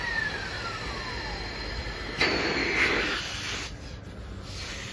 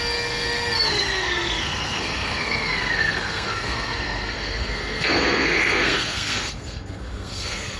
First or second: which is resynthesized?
second